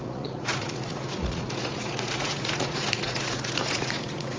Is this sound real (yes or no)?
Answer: no